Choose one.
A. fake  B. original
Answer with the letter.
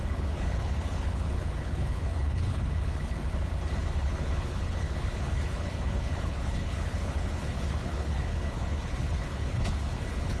A